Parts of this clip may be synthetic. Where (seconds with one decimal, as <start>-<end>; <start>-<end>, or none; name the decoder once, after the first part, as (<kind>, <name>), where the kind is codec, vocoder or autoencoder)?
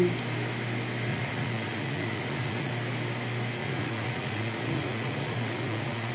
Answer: 1.1-2.7 (vocoder, Vocos); 3.6-6.1